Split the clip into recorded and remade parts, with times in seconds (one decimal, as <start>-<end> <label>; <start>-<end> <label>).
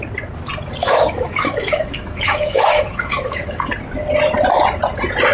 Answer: 0.0-0.8 recorded; 0.8-3.7 remade; 3.7-5.3 recorded